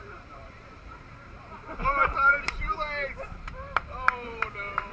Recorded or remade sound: remade